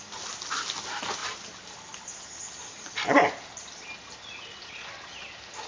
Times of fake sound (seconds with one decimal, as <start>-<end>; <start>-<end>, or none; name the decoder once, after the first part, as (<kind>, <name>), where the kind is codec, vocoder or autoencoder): none